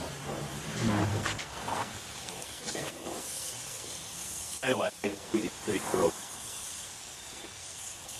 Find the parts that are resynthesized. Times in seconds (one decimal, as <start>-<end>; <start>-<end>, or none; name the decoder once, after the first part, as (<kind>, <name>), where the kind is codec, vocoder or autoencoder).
1.1-5.4 (codec, SNAC); 5.9-8.2